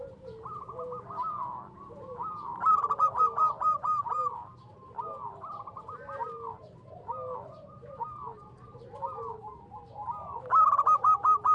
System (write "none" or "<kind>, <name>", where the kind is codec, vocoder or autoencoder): vocoder, BigVGAN v2